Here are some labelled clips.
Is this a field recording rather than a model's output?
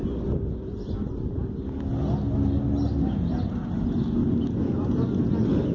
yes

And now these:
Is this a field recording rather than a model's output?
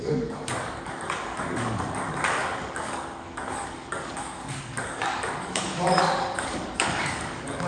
no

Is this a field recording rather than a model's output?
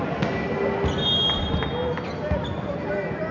yes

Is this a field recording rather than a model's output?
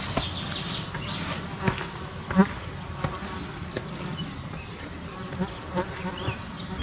yes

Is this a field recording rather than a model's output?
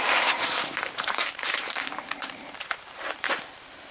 no